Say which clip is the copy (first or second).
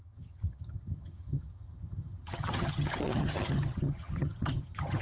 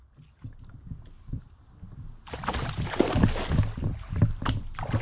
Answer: first